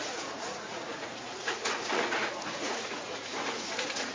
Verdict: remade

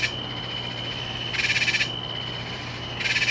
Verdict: recorded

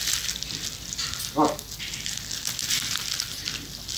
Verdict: recorded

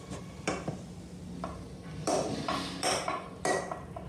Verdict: recorded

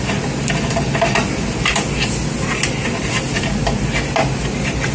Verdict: recorded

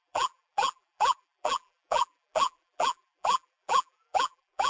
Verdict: remade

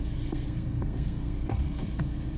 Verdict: remade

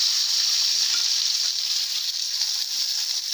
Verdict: remade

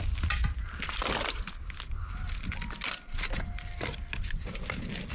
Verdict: recorded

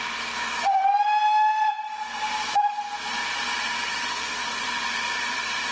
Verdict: recorded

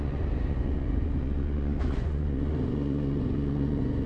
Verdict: remade